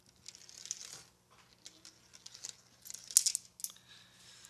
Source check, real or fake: real